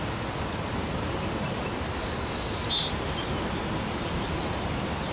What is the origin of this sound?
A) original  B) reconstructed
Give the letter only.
A